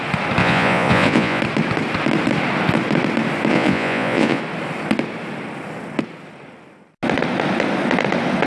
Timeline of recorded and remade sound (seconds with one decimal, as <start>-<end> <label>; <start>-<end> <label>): 0.0-0.4 recorded; 0.4-1.4 remade; 1.4-3.5 recorded; 3.5-4.4 remade; 4.4-8.5 recorded